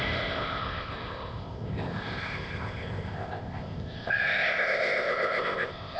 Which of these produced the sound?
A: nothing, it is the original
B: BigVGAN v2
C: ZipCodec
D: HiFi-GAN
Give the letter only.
C